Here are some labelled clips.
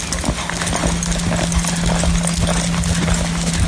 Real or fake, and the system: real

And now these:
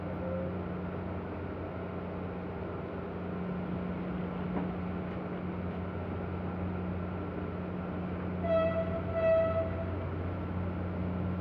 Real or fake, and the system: real